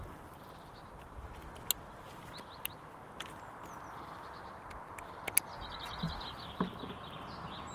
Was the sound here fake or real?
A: real